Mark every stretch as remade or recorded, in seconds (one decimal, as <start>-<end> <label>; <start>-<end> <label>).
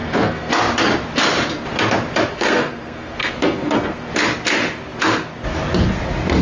0.0-0.5 remade; 0.5-2.3 recorded; 2.3-4.1 remade; 4.1-6.4 recorded